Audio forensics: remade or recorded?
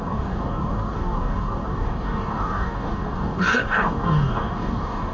remade